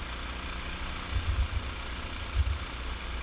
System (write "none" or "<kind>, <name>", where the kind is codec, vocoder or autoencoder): none